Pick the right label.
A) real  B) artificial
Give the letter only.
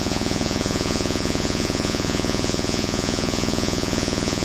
B